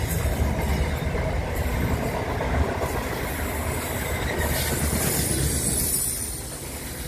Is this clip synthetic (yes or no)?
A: no